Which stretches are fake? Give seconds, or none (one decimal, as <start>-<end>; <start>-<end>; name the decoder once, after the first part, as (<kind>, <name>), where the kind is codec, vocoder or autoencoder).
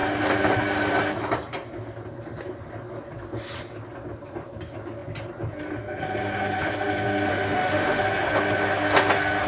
7.3-8.0 (autoencoder, DAC-VAE)